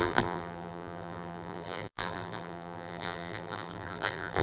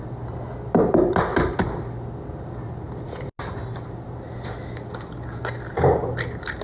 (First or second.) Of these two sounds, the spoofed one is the first